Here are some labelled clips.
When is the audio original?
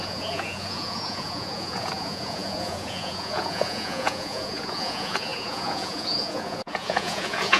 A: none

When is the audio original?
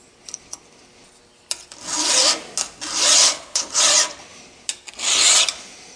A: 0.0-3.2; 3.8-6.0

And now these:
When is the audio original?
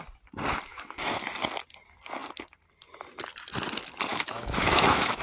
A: 0.0-0.7; 1.2-4.1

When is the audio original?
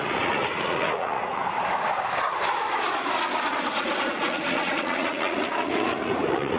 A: 1.4-3.8